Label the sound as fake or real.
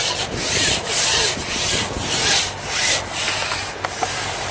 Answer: real